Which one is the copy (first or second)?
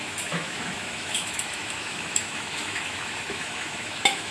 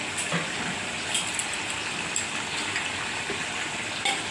first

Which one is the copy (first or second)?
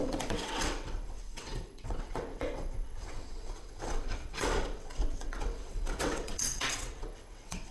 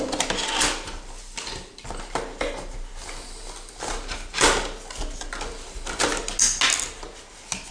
first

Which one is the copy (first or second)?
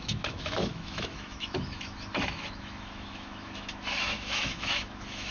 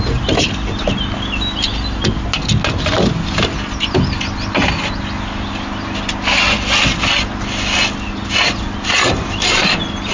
first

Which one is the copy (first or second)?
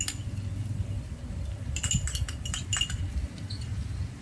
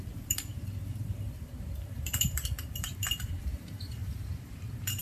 second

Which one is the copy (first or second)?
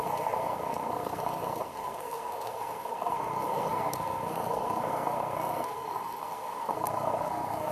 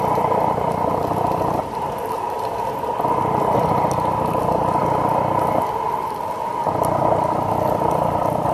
first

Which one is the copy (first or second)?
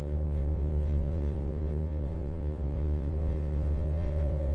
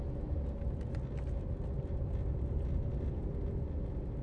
first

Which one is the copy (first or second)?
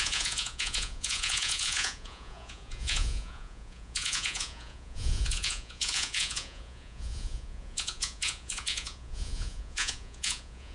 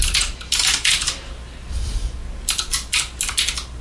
first